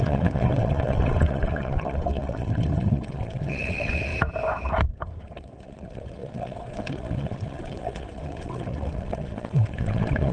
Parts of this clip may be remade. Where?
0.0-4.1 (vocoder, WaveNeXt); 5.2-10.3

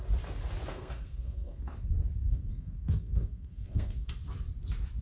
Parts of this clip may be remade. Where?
0.7-1.6 (codec, SNAC); 2.2-4.1

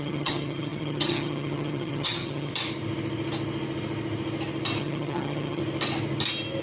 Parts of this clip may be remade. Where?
0.0-2.5 (vocoder, HiFi-GAN); 4.8-5.6

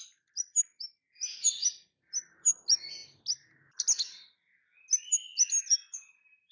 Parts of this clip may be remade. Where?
none